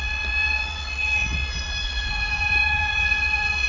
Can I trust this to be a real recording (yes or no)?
no